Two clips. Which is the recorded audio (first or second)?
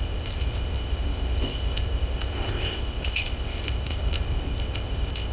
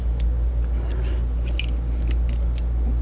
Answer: second